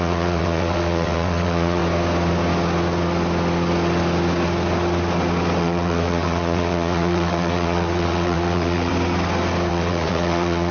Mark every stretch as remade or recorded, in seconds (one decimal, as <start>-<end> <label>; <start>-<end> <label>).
0.0-1.8 remade; 1.8-5.6 recorded; 5.6-8.9 remade; 8.9-9.7 recorded; 9.7-10.7 remade